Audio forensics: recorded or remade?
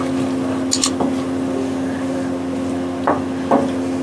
recorded